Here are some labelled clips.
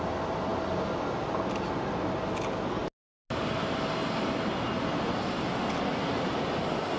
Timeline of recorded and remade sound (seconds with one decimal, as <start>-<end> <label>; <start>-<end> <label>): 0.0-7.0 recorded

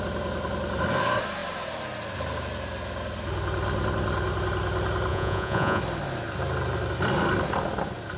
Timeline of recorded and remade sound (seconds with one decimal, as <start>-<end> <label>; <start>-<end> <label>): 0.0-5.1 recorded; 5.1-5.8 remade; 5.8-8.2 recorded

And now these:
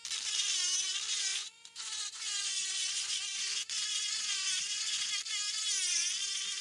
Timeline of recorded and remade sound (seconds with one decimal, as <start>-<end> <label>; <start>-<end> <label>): 0.0-1.3 recorded; 1.3-5.1 remade; 5.1-6.6 recorded

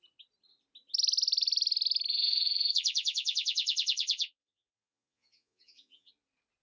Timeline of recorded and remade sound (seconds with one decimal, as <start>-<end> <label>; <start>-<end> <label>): 0.0-2.1 recorded; 2.1-6.1 remade; 6.1-6.6 recorded

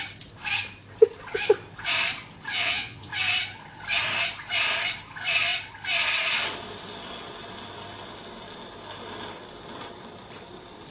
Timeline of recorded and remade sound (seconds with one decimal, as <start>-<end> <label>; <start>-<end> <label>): 0.0-2.5 recorded; 2.5-3.1 remade; 3.1-10.9 recorded

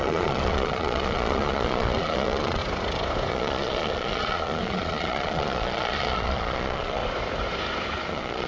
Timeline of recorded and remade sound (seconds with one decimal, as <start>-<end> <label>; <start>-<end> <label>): 0.0-2.6 remade; 2.6-3.3 recorded; 3.3-7.0 remade; 7.0-8.1 recorded; 8.1-8.5 remade

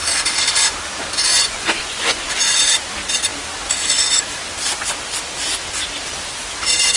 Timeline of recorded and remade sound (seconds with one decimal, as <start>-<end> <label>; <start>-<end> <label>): 0.0-1.3 recorded; 1.3-2.4 remade; 2.4-7.0 recorded